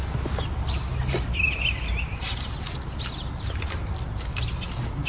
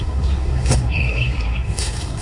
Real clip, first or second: first